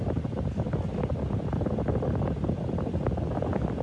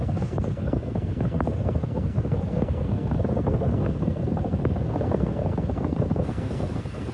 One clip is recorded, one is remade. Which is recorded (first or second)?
first